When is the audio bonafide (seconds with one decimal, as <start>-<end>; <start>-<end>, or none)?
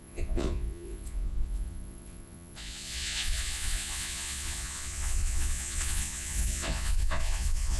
none